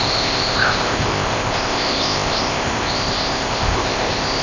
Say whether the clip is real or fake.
fake